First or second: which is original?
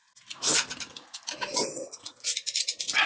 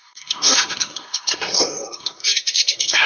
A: first